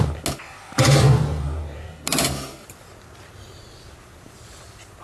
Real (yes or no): yes